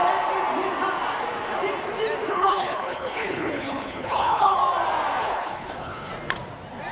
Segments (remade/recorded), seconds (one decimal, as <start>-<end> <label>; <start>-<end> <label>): 0.0-2.3 recorded; 2.3-4.6 remade; 4.6-5.2 recorded; 5.2-6.1 remade; 6.1-6.9 recorded